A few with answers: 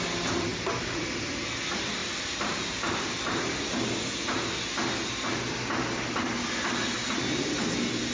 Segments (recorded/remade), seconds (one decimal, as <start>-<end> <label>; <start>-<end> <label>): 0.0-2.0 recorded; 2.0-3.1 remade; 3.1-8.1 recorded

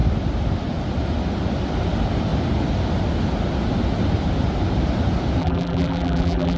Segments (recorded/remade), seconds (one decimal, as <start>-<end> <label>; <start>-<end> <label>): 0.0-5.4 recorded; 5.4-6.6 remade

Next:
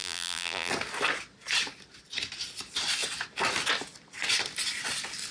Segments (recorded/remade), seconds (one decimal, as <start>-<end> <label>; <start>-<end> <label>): 0.0-0.7 remade; 0.7-5.3 recorded

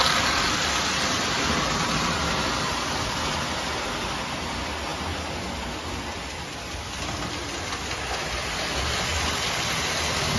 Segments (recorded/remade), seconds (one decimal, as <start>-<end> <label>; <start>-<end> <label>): 0.0-10.4 recorded

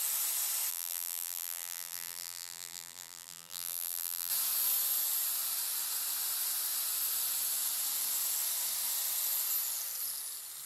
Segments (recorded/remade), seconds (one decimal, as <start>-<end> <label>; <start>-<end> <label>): 0.0-0.7 recorded; 0.7-4.3 remade; 4.3-10.7 recorded

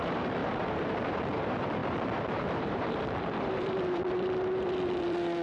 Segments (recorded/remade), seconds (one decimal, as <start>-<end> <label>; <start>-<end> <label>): 0.0-5.4 remade